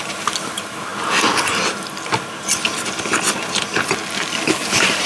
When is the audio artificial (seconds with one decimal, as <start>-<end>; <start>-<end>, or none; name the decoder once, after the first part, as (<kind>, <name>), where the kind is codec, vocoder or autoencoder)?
none